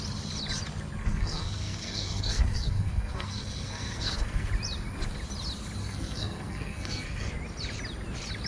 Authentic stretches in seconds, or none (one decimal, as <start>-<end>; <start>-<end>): 0.0-1.0; 4.5-5.8; 7.3-8.5